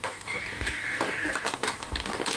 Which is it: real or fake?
fake